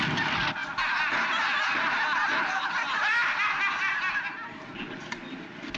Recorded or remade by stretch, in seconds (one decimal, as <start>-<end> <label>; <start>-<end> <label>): 0.0-5.8 recorded